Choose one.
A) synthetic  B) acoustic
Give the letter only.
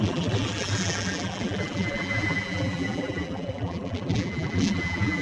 A